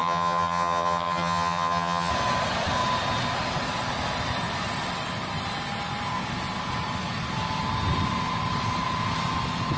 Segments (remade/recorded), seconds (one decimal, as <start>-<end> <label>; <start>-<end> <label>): 0.0-2.1 remade; 2.1-9.8 recorded